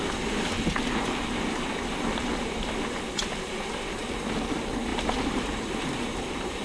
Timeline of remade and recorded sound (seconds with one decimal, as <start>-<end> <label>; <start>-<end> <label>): 0.0-4.9 recorded; 4.9-6.6 remade